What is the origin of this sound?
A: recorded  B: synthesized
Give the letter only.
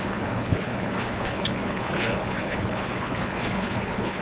B